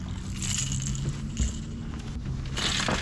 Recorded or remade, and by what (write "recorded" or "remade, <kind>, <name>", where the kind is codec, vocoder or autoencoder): recorded